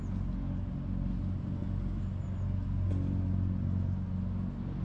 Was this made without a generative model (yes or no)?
yes